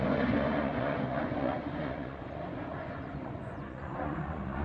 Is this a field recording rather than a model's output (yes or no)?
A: no